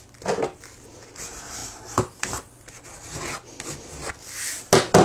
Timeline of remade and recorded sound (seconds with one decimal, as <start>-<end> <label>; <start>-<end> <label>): 0.0-5.0 recorded